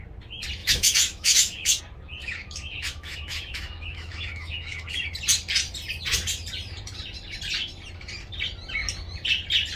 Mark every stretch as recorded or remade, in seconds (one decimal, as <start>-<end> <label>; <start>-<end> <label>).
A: 0.0-0.6 recorded; 0.6-1.8 remade; 1.8-2.2 recorded; 2.2-5.1 remade; 5.1-9.8 recorded